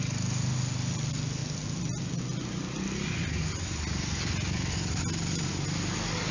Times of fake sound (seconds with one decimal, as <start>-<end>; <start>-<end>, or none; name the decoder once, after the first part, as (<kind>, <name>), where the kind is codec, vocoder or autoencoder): none